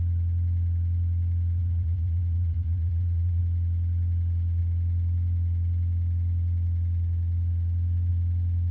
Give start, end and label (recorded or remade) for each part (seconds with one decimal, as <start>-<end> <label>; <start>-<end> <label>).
0.0-1.6 recorded; 1.6-3.4 remade; 3.4-8.7 recorded